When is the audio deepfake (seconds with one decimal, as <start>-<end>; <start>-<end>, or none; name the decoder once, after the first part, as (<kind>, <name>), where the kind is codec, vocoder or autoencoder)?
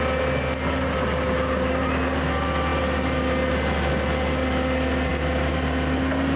none